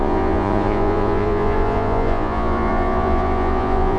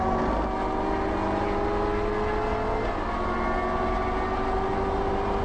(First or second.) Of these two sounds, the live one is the second